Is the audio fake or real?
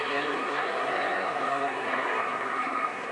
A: fake